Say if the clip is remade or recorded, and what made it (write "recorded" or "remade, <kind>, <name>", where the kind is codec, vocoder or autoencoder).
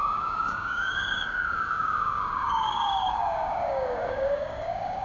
remade, codec, DAC